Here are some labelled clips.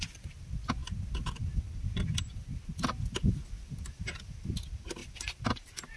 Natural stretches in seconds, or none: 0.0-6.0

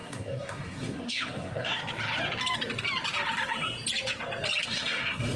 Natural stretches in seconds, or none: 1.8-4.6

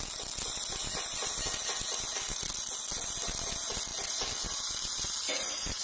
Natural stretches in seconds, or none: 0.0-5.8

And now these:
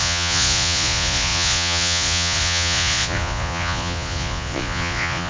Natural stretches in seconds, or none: none